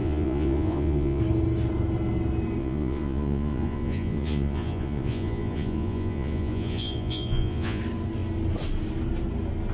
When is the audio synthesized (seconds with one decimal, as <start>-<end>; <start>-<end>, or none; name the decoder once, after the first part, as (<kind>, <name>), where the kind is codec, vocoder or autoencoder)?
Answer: 0.0-1.2 (vocoder, Vocos); 2.6-7.8